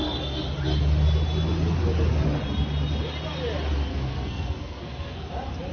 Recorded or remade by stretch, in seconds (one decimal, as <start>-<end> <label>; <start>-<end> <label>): 0.0-3.9 recorded; 3.9-5.3 remade; 5.3-5.7 recorded